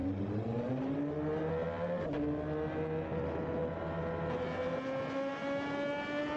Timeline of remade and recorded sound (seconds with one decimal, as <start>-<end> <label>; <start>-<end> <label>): 0.0-6.4 recorded